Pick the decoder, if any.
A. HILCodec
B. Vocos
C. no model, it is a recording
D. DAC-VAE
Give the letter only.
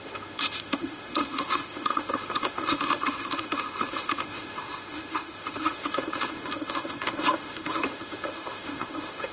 D